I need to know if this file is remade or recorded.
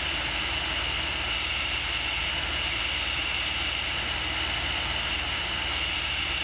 recorded